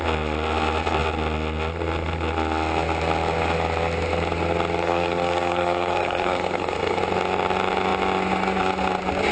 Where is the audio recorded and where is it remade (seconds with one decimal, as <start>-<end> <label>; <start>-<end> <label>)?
0.0-4.8 recorded; 4.8-7.0 remade; 7.0-9.3 recorded